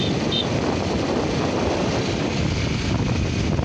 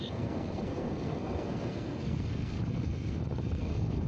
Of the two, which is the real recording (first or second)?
first